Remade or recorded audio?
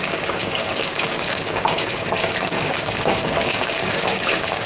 remade